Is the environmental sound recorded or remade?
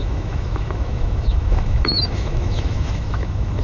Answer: remade